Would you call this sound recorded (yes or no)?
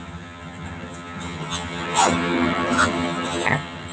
no